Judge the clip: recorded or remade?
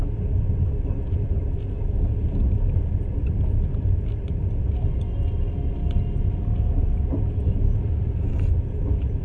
recorded